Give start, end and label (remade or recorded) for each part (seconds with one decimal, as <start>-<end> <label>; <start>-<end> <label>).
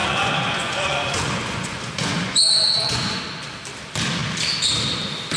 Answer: 0.0-3.2 remade; 3.2-5.4 recorded